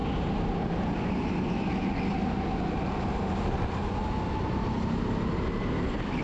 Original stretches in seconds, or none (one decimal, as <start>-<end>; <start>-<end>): 0.0-6.2